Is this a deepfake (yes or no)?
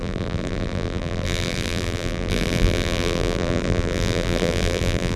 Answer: yes